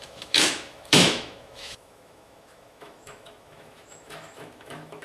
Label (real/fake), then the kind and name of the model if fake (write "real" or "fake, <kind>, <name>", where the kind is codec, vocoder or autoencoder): fake, autoencoder, DAC-VAE